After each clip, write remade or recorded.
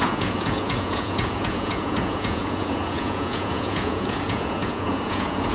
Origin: remade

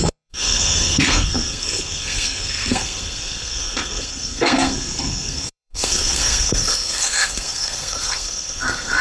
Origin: remade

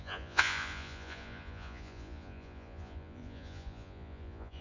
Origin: remade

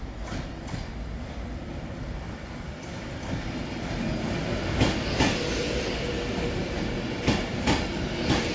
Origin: recorded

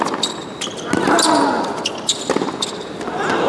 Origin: recorded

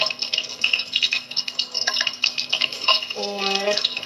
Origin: remade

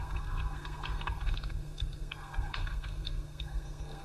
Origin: remade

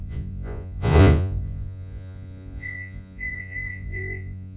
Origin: remade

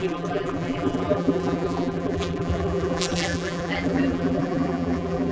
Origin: remade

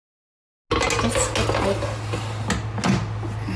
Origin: recorded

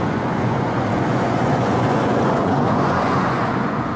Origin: remade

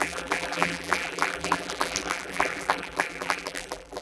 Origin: remade